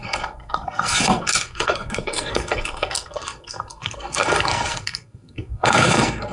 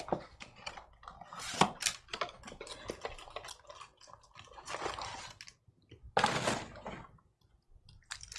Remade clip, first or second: first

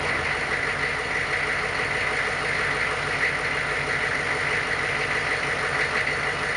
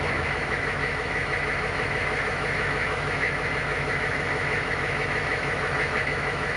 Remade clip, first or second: second